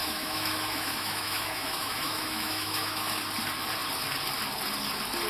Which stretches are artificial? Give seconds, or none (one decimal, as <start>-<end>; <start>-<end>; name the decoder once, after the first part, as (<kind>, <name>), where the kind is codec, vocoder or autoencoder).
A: 0.0-3.2 (autoencoder, DAC-VAE)